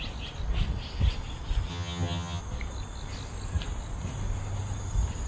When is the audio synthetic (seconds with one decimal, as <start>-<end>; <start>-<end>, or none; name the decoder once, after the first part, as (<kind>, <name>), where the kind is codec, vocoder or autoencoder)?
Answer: 1.7-2.4 (vocoder, HiFi-GAN)